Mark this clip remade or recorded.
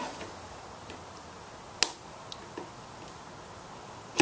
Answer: recorded